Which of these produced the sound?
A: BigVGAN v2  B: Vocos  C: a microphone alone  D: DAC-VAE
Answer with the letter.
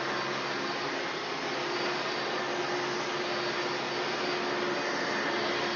C